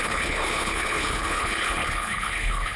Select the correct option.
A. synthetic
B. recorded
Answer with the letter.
A